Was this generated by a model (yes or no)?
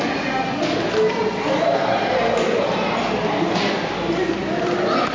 no